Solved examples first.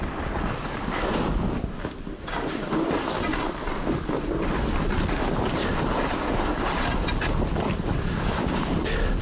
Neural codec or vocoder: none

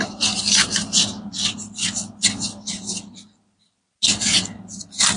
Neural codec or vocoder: none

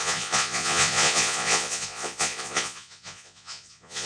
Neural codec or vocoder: vocoder, Vocos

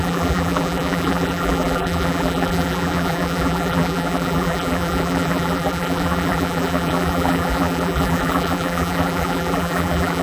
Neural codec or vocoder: vocoder, BigVGAN v2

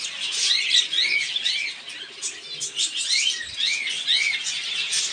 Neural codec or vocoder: none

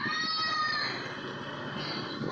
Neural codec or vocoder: none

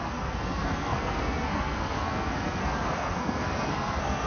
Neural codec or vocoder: codec, SNAC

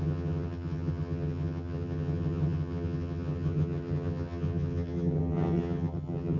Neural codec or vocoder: vocoder, HiFi-GAN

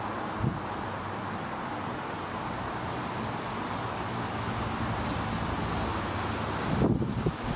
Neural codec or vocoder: none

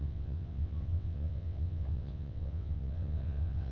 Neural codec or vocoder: vocoder, WaveNeXt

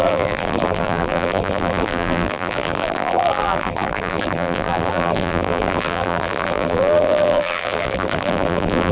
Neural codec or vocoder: vocoder, BigVGAN v2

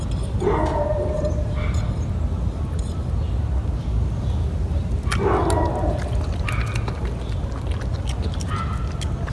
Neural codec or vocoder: none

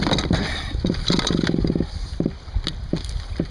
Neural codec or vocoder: none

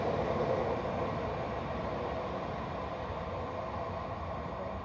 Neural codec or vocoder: none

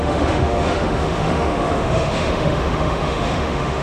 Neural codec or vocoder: autoencoder, DAC-VAE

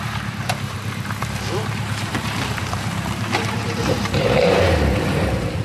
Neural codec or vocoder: vocoder, BigVGAN v2